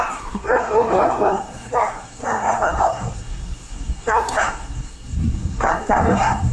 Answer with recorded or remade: remade